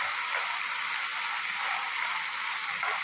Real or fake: real